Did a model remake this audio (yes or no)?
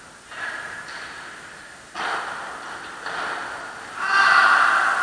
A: no